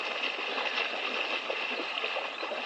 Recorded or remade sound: recorded